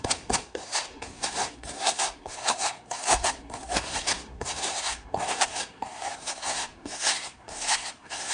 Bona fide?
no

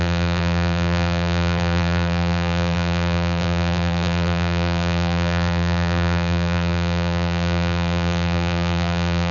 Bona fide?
no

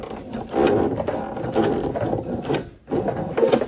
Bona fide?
yes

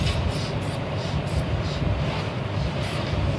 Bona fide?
yes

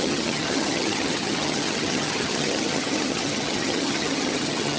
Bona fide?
no